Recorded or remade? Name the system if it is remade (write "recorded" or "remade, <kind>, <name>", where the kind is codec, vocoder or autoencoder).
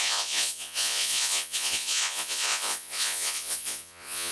remade, vocoder, Vocos